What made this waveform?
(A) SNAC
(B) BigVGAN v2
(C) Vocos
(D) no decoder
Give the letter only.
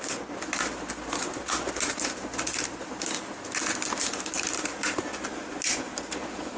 D